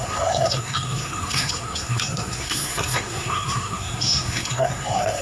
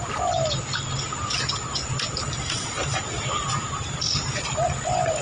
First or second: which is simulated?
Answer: first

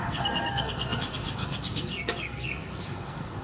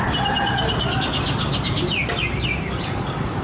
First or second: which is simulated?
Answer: first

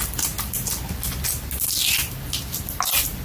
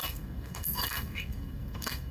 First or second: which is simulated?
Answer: second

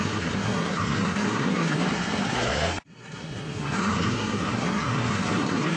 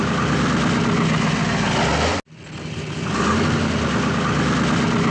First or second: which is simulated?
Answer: first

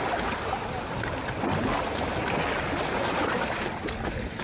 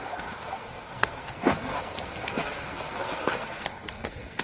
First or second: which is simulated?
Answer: second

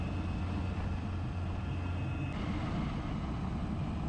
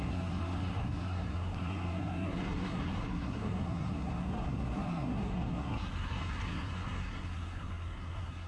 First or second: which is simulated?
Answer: second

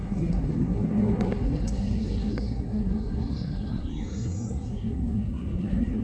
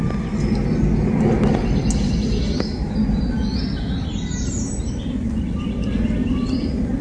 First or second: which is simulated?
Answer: first